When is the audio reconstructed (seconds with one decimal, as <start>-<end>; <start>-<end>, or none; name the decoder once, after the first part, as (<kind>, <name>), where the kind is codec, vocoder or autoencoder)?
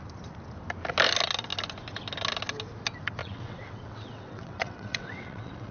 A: 3.2-5.7 (vocoder, WaveNeXt)